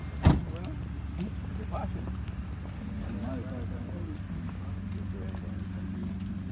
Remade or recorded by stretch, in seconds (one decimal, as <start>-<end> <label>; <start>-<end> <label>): 0.0-6.5 recorded